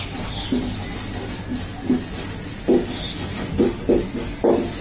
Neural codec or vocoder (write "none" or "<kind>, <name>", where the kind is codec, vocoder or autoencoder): none